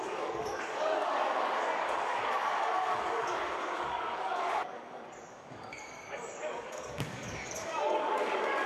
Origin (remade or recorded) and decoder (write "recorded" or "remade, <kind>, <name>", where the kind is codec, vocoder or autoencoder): remade, codec, DAC